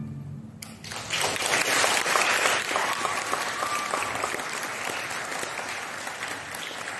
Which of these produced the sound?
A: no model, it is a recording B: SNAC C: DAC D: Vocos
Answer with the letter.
A